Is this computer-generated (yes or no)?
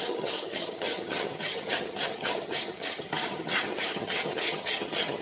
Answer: yes